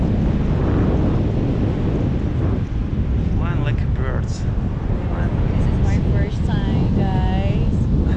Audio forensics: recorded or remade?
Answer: recorded